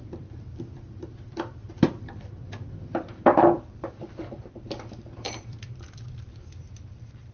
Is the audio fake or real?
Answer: fake